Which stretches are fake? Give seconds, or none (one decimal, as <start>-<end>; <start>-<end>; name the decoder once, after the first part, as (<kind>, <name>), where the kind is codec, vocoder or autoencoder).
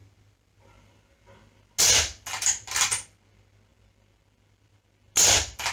none